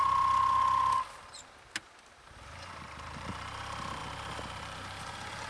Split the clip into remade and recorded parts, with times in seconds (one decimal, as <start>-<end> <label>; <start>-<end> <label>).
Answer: 0.0-2.2 recorded; 2.2-4.0 remade; 4.0-4.6 recorded; 4.6-5.5 remade